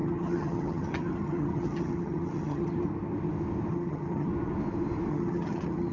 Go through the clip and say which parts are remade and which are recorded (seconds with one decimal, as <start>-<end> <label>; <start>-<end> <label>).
0.0-2.8 remade; 2.8-3.7 recorded; 3.7-4.3 remade; 4.3-5.1 recorded; 5.1-5.9 remade